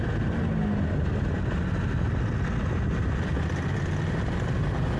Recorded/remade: recorded